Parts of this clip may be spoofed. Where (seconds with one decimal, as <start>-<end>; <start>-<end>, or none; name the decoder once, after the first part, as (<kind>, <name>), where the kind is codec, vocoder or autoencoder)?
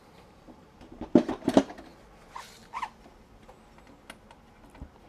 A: 0.0-1.9 (vocoder, BigVGAN v2)